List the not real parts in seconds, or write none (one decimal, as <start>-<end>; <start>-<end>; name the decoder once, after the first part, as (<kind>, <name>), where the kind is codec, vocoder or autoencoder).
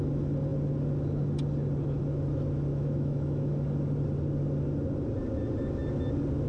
2.7-3.5 (autoencoder, DAC-VAE)